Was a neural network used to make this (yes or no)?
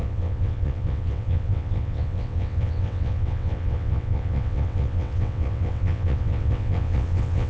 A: yes